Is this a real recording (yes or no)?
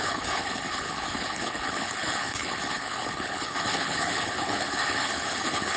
no